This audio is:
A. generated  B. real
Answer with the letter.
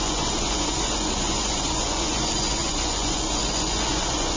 A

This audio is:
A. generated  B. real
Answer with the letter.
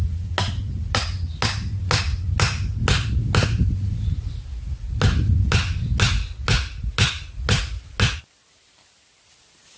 B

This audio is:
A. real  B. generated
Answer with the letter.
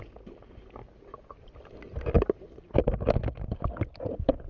A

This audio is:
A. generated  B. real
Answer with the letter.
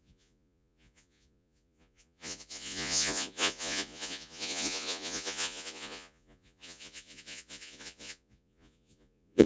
A